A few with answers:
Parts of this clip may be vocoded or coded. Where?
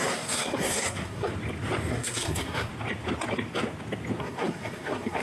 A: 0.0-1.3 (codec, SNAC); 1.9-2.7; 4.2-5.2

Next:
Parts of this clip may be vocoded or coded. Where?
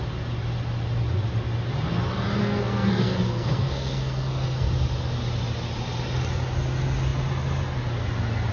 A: 2.4-4.7 (codec, SNAC)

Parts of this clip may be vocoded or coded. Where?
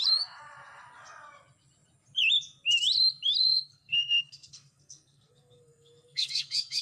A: 3.4-6.8 (codec, SNAC)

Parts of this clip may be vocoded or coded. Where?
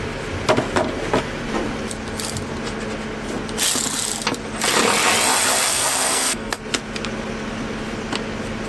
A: 5.7-6.6 (codec, SNAC)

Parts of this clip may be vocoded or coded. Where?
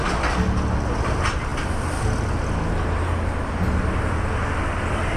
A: none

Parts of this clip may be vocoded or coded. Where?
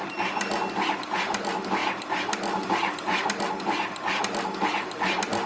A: none